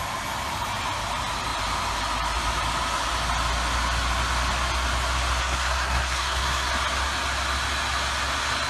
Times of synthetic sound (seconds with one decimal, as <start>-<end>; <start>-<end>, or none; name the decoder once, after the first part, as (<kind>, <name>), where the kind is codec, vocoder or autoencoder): 5.4-6.7 (codec, SNAC)